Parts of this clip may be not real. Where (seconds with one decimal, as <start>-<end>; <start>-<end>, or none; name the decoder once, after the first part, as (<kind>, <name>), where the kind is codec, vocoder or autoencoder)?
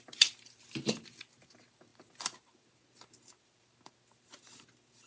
0.0-5.1 (vocoder, BigVGAN v2)